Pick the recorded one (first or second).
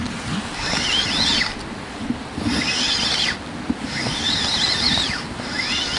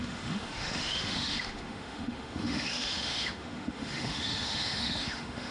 first